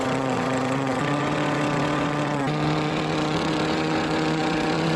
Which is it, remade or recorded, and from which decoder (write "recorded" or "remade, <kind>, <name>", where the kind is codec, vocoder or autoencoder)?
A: remade, vocoder, WaveNeXt